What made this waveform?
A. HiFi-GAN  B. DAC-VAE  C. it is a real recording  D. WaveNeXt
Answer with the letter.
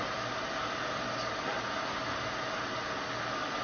C